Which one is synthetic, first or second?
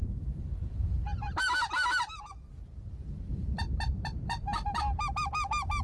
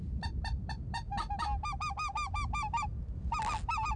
first